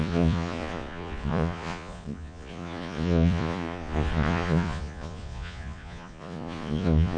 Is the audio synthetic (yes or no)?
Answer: yes